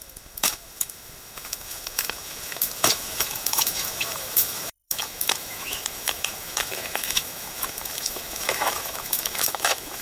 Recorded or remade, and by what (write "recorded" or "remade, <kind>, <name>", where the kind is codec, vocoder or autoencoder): remade, autoencoder, DAC-VAE